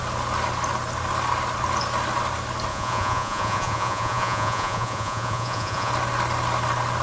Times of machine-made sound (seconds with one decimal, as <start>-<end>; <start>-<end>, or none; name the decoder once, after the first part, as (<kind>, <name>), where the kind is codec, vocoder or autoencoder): 2.7-5.9 (vocoder, Vocos)